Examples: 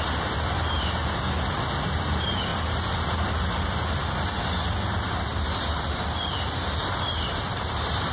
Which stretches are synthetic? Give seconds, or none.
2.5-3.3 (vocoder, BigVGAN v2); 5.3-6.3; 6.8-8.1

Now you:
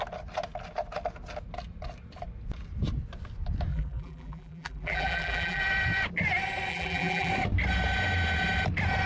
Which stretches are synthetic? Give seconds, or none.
3.7-5.6 (vocoder, BigVGAN v2); 6.7-7.3

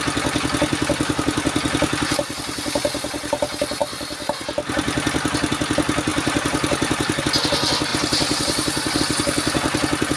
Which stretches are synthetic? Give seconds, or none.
6.1-7.2 (vocoder, BigVGAN v2); 7.9-9.0

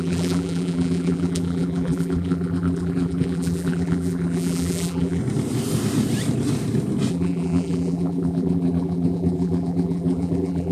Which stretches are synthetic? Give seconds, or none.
0.0-5.2 (vocoder, BigVGAN v2); 7.1-10.7

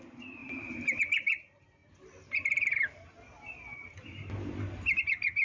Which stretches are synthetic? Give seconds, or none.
0.4-1.0 (vocoder, BigVGAN v2)

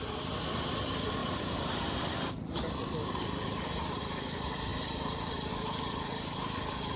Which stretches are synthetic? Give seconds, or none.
1.2-2.1 (vocoder, BigVGAN v2); 3.0-4.0; 4.7-5.5